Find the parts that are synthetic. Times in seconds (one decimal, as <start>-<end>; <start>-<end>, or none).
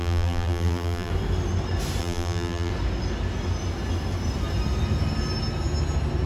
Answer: 0.0-1.1; 2.0-2.7